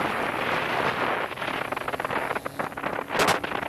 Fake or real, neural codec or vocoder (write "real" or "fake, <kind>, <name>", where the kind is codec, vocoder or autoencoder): real